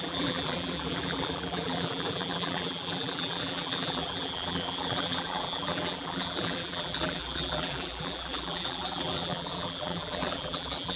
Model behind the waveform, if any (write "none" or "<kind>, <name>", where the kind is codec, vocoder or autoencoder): vocoder, BigVGAN v2